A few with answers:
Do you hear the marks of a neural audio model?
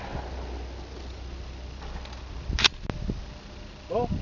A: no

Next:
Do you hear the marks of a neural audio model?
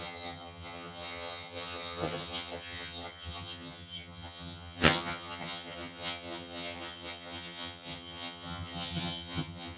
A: yes